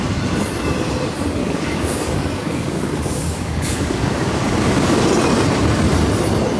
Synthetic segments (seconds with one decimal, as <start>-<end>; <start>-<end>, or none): 1.4-5.0